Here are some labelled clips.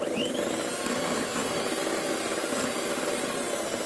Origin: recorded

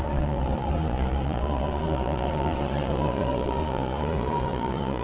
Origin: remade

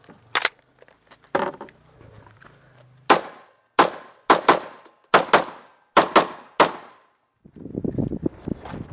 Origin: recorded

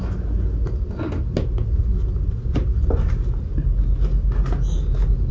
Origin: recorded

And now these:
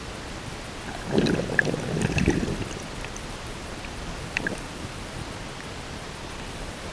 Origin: recorded